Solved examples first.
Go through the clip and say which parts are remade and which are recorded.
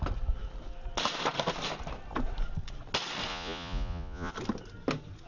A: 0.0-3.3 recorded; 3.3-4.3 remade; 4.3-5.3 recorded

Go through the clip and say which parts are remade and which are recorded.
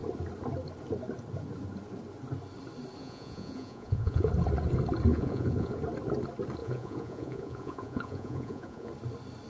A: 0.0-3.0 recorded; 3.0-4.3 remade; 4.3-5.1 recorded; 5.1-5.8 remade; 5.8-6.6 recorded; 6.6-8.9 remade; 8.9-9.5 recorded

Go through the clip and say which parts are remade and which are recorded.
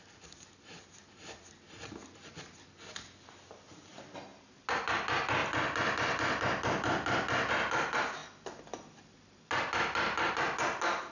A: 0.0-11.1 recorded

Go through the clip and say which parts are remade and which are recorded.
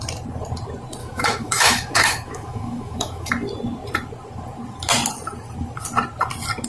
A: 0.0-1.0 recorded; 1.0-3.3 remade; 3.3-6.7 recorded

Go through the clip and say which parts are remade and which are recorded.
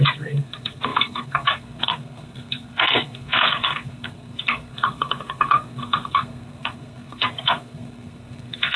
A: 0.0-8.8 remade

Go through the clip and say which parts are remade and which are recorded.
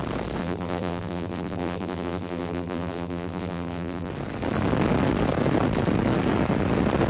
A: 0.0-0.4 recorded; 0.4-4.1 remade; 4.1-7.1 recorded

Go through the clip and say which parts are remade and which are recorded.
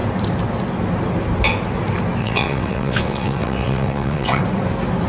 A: 0.0-2.2 recorded; 2.2-4.4 remade; 4.4-5.1 recorded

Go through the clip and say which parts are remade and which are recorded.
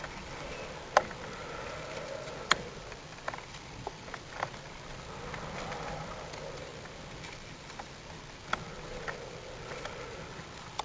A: 0.0-10.8 recorded